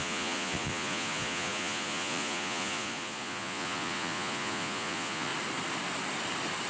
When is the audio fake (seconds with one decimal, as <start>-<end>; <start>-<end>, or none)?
0.0-5.3